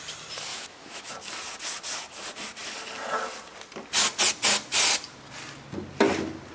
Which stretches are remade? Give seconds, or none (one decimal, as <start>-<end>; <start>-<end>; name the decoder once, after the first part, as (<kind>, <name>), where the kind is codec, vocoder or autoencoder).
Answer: 0.5-1.1 (autoencoder, DAC-VAE)